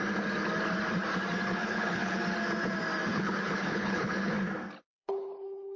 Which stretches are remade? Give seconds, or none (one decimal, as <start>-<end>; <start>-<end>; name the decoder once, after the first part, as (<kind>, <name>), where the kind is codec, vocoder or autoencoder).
1.6-2.2 (codec, HILCodec); 3.1-4.3; 4.9-5.8